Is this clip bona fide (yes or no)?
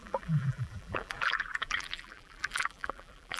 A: no